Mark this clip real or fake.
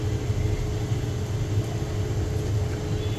real